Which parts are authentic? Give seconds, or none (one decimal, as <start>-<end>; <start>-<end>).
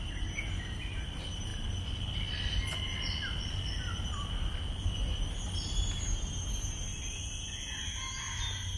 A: 0.0-8.8